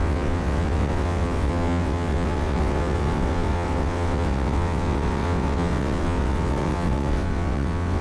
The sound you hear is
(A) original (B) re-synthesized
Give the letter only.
B